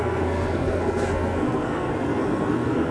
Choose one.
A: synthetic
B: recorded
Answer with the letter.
A